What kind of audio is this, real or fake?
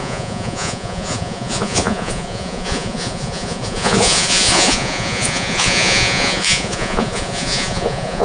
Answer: fake